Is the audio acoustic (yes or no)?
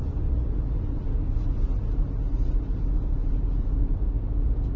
yes